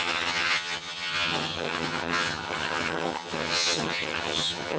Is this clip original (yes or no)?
no